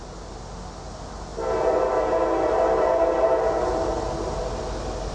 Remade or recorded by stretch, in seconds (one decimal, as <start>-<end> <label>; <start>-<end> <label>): 0.0-5.1 recorded